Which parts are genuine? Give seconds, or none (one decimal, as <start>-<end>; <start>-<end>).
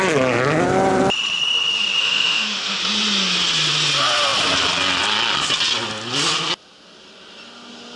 0.0-2.0; 2.8-8.0